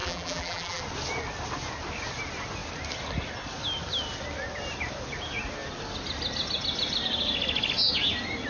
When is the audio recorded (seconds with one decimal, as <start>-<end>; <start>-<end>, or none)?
0.8-8.5